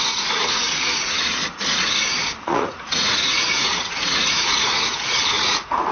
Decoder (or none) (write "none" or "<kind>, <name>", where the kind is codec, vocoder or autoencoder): vocoder, Vocos